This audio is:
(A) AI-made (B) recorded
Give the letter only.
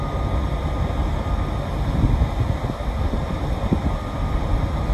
B